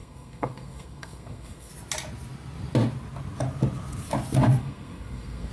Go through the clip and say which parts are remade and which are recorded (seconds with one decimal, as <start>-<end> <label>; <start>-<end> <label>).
0.0-1.7 remade; 1.7-4.6 recorded; 4.6-5.5 remade